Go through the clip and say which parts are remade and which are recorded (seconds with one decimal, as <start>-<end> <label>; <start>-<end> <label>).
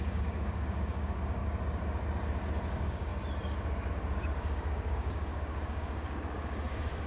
0.0-1.4 remade; 1.4-2.7 recorded; 2.7-3.1 remade; 3.1-3.9 recorded; 3.9-7.1 remade